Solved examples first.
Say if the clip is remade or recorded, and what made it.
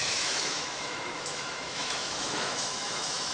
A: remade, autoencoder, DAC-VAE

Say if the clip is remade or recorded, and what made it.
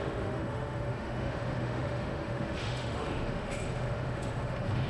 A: remade, autoencoder, DAC-VAE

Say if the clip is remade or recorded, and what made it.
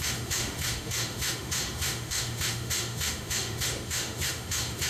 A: remade, autoencoder, DAC-VAE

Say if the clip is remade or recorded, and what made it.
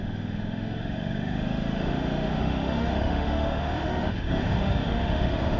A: remade, autoencoder, DAC-VAE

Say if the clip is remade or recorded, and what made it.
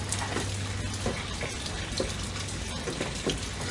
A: recorded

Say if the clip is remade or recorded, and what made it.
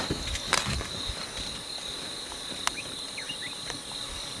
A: recorded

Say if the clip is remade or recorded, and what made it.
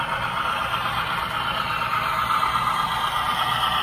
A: recorded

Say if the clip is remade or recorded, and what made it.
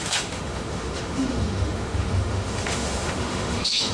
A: remade, autoencoder, DAC-VAE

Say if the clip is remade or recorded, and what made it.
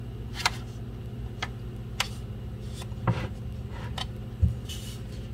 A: recorded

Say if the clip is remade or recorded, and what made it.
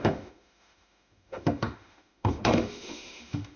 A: remade, autoencoder, DAC-VAE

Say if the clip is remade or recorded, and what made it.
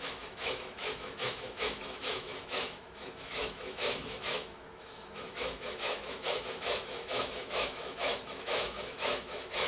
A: remade, autoencoder, DAC-VAE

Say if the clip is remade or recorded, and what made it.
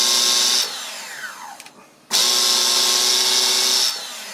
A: recorded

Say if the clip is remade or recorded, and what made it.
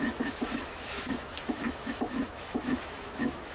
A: remade, autoencoder, DAC-VAE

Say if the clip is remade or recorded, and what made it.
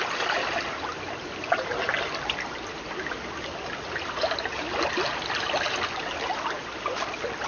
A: recorded